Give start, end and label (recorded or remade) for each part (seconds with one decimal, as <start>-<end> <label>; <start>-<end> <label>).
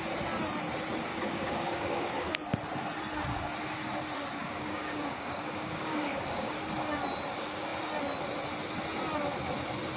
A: 0.0-1.1 recorded; 1.1-2.3 remade; 2.3-4.4 recorded; 4.4-6.6 remade; 6.6-10.0 recorded